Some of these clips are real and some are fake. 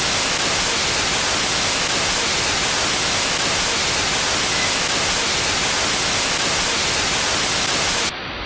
real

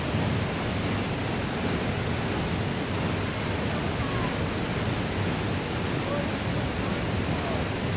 real